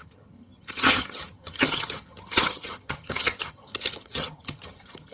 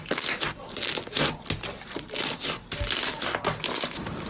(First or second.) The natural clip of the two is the second